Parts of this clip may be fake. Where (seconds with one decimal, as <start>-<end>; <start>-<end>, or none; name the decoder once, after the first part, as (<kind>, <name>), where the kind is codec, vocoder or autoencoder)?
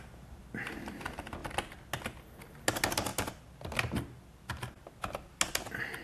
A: none